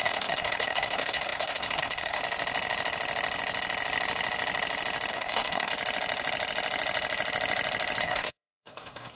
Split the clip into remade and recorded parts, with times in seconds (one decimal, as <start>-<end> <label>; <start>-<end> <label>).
0.0-2.2 remade; 2.2-5.1 recorded; 5.1-5.7 remade; 5.7-8.0 recorded; 8.0-9.2 remade